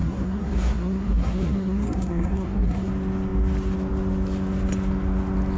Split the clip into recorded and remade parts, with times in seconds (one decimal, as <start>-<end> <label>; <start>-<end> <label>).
0.0-2.9 remade; 2.9-5.6 recorded

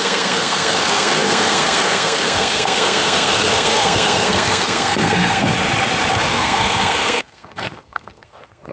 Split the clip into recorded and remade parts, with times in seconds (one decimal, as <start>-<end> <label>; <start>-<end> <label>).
0.0-5.5 remade; 5.5-6.1 recorded; 6.1-8.7 remade

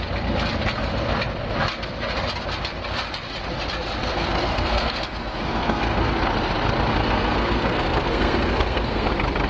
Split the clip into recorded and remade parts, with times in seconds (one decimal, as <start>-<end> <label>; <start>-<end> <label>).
0.0-4.0 recorded; 4.0-6.1 remade; 6.1-6.9 recorded; 6.9-9.1 remade; 9.1-9.5 recorded